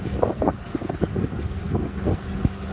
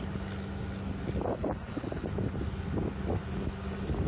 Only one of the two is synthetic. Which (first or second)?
first